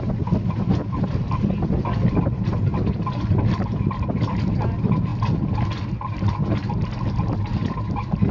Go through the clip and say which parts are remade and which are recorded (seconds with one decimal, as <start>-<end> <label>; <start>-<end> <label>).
0.0-8.3 recorded